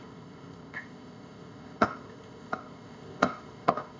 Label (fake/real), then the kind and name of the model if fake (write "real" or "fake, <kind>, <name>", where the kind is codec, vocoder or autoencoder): fake, codec, ZipCodec